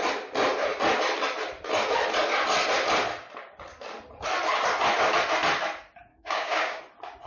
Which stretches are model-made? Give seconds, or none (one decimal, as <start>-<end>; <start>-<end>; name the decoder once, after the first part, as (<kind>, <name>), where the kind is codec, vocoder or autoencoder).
6.1-6.8 (codec, DAC)